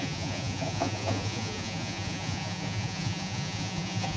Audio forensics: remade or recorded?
remade